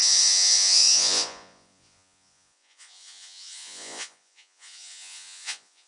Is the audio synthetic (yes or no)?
yes